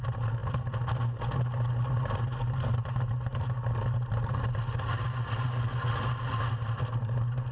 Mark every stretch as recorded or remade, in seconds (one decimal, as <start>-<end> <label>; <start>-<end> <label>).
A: 0.0-7.5 recorded